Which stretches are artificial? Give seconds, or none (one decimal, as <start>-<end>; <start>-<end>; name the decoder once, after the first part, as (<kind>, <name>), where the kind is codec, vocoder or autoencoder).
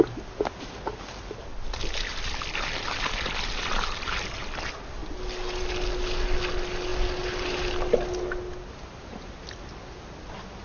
none